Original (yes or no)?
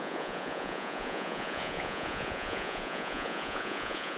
no